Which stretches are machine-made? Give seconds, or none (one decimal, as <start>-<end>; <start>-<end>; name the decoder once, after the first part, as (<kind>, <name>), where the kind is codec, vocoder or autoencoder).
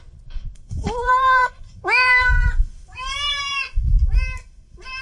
0.8-3.8 (vocoder, BigVGAN v2)